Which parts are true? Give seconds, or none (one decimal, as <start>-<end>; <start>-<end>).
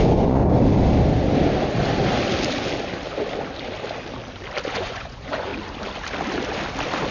0.4-4.7; 5.5-7.1